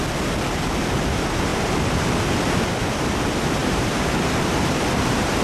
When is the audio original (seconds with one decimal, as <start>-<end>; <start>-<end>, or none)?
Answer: 0.0-3.6